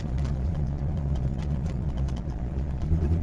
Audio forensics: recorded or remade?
remade